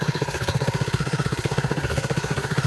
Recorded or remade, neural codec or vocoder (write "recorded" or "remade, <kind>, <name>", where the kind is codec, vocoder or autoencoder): remade, codec, SNAC